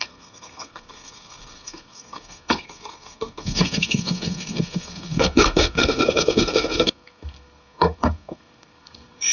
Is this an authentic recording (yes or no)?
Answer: no